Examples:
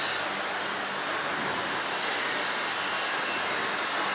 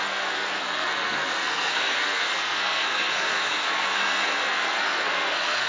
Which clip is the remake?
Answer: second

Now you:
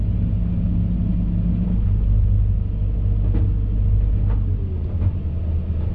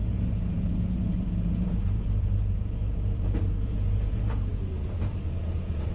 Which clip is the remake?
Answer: second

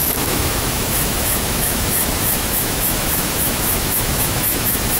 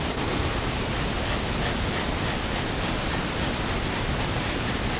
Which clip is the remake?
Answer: first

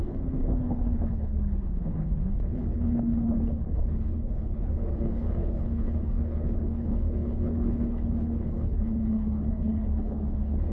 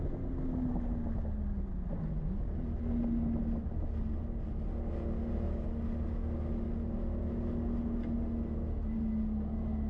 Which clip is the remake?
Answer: first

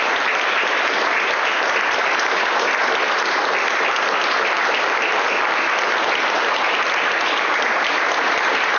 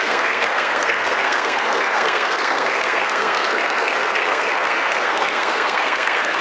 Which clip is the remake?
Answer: second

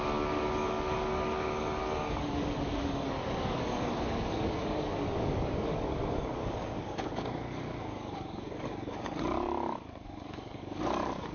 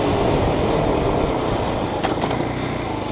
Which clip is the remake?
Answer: first